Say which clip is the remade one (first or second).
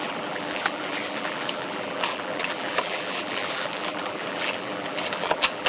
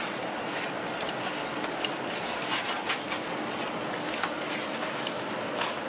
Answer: first